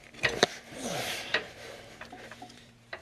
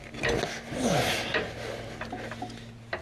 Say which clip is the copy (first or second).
first